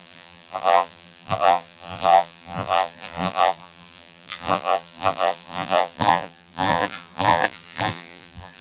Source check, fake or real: fake